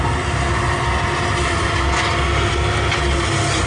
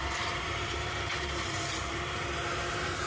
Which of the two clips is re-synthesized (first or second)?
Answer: second